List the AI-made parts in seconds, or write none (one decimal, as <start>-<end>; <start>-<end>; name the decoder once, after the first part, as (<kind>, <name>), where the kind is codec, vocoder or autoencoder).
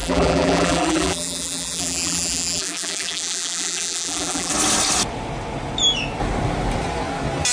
0.0-4.5 (vocoder, BigVGAN v2)